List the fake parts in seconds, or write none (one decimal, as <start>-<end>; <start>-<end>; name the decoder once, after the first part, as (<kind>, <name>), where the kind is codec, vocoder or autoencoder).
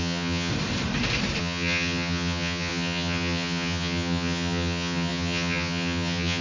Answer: 0.0-0.5 (vocoder, HiFi-GAN); 1.4-6.4